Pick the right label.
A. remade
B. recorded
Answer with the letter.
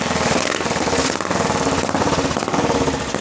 B